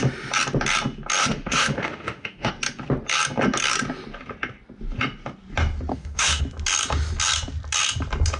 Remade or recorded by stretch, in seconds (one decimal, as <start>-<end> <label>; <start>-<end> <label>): 0.0-1.2 recorded; 1.2-2.5 remade; 2.5-5.9 recorded; 5.9-6.4 remade; 6.4-8.4 recorded